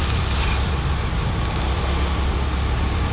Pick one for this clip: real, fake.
real